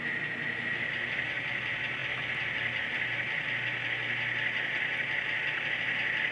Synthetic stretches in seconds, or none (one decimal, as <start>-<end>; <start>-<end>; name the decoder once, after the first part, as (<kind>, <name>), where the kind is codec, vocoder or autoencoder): none